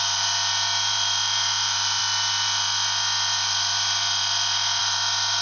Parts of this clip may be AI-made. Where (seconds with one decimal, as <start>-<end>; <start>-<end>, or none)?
none